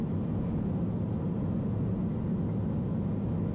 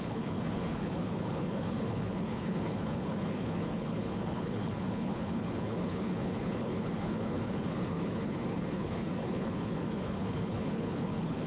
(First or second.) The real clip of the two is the first